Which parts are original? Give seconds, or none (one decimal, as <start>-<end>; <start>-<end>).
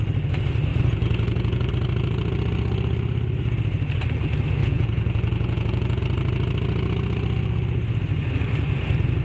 0.0-0.7; 1.7-4.6; 6.0-9.2